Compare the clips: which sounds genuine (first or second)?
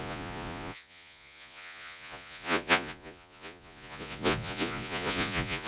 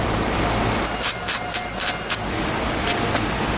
second